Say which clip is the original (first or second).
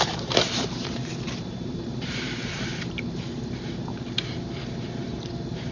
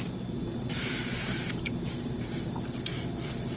second